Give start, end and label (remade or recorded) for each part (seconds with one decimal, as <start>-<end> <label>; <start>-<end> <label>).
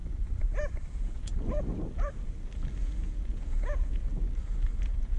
0.0-0.9 recorded; 0.9-1.3 remade; 1.3-2.8 recorded; 2.8-4.1 remade; 4.1-4.8 recorded; 4.8-5.2 remade